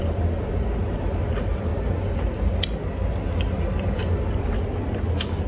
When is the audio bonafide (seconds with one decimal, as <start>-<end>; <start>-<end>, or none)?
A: 0.0-5.5